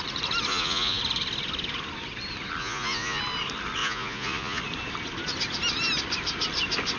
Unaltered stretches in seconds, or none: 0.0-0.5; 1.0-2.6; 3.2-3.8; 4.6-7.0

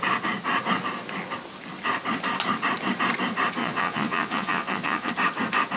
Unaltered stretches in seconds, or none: 0.0-3.6; 5.1-5.8

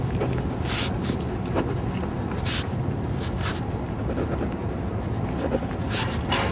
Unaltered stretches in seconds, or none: 0.0-6.5